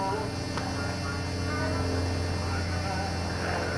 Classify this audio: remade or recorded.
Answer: recorded